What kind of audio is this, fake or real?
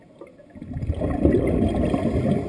real